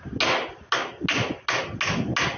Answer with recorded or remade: recorded